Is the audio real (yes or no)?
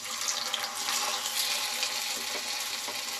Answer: yes